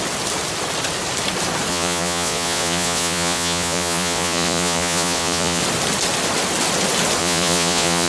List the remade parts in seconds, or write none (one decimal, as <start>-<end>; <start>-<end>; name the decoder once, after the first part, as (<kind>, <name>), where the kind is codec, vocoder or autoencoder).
1.7-5.6 (vocoder, Vocos); 7.2-8.1